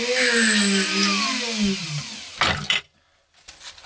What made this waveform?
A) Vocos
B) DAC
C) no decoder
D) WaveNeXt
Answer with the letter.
C